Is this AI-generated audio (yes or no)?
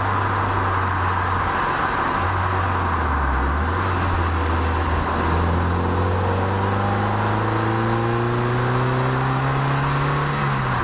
no